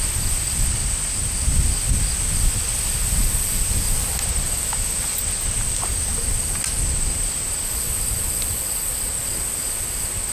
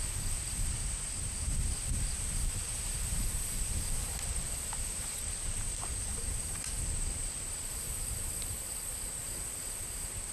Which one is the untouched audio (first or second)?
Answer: first